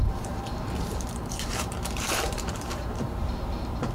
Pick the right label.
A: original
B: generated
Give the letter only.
B